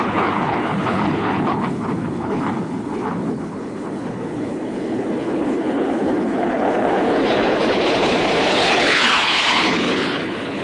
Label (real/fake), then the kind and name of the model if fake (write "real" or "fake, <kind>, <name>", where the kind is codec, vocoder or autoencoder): fake, codec, HILCodec